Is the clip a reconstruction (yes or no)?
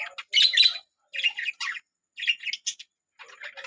no